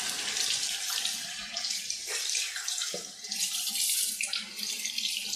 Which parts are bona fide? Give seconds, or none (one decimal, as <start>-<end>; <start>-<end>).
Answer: 0.0-1.3; 4.5-5.4